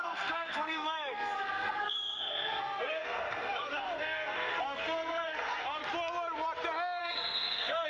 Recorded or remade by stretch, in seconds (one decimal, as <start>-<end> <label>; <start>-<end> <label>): 0.0-5.8 remade; 5.8-7.0 recorded; 7.0-7.9 remade